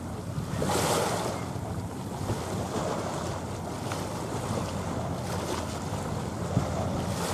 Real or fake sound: real